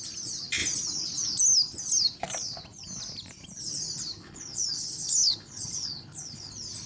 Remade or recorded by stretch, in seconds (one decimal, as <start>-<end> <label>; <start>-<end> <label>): 0.0-4.2 recorded; 4.2-6.5 remade; 6.5-6.9 recorded